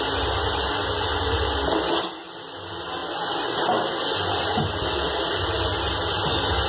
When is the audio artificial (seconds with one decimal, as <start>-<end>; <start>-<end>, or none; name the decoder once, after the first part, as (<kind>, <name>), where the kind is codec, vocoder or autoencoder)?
none